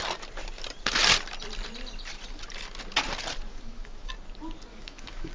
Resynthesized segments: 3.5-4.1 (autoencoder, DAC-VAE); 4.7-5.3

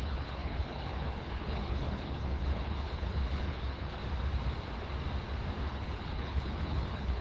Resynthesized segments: 0.0-4.0 (codec, HILCodec); 5.6-7.2

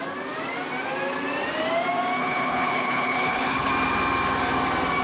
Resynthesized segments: 2.2-3.7 (codec, HILCodec)

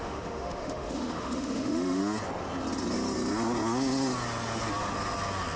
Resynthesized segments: 0.0-2.0 (autoencoder, DAC-VAE)

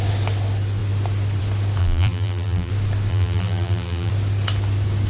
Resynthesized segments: 1.8-2.7 (vocoder, BigVGAN v2); 3.1-4.1

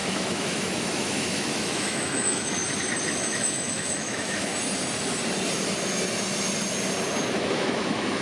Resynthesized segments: 0.0-2.6 (autoencoder, DAC-VAE); 3.1-4.5; 7.4-8.2